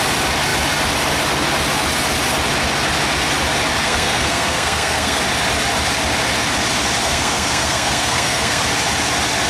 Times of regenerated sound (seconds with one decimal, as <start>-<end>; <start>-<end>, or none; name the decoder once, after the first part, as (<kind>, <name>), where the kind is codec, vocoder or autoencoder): 3.8-5.2 (codec, SNAC); 7.0-8.6